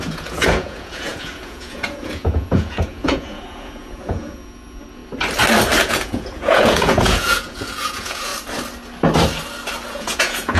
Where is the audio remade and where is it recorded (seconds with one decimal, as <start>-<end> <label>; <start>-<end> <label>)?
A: 0.0-5.0 remade; 5.0-5.8 recorded; 5.8-8.3 remade; 8.3-9.9 recorded; 9.9-10.6 remade